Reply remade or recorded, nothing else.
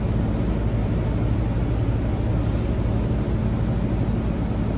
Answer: recorded